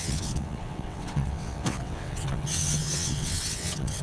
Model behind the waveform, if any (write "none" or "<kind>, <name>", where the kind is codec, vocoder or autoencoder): vocoder, WaveNeXt